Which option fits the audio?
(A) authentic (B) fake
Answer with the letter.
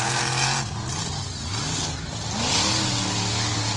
A